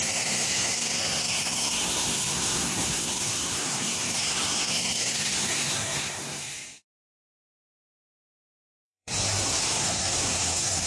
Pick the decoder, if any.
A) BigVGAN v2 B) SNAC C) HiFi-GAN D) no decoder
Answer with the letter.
B